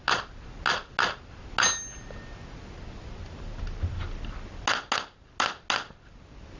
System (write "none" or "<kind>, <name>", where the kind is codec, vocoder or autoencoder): none